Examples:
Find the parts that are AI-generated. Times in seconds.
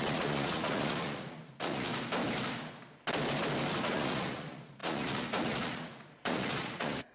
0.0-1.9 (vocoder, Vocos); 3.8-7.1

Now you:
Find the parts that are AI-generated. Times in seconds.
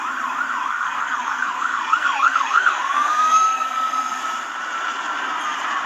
0.7-4.2 (codec, SNAC)